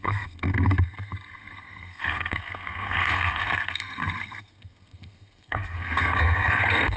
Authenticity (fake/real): fake